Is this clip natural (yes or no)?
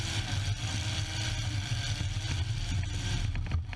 yes